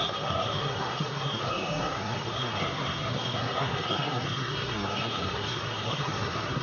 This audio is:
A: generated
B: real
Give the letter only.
A